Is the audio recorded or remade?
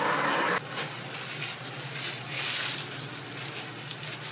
recorded